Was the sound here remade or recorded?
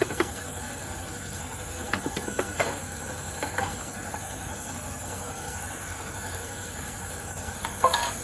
remade